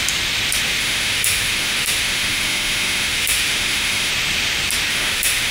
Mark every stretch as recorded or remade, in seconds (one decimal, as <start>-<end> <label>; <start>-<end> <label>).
0.0-0.8 recorded; 0.8-4.1 remade; 4.1-4.9 recorded; 4.9-5.5 remade